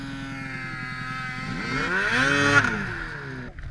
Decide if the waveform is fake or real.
real